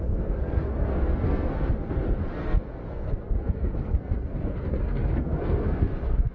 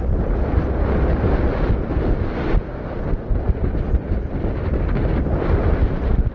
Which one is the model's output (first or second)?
first